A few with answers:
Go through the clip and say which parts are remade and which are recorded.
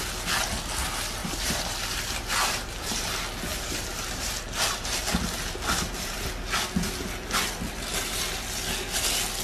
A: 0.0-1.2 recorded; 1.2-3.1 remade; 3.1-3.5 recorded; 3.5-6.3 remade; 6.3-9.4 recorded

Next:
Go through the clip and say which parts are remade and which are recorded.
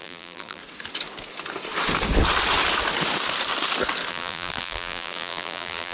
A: 0.0-0.6 remade; 0.6-4.1 recorded; 4.1-5.9 remade